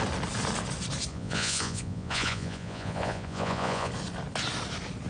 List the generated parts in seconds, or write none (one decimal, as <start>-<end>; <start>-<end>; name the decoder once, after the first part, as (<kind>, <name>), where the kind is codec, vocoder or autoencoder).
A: 1.1-3.9 (vocoder, Vocos)